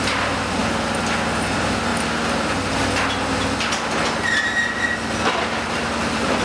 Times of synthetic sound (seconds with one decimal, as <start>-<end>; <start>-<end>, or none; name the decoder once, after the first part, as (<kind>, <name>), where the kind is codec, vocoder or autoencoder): 0.0-0.6 (vocoder, BigVGAN v2); 1.5-1.9; 5.7-6.4